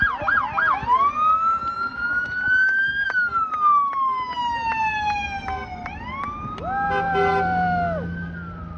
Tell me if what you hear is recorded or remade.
recorded